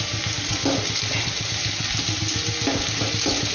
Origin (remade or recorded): recorded